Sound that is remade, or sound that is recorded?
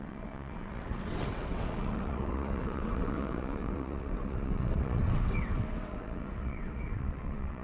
remade